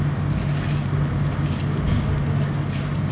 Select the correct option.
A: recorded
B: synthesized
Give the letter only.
A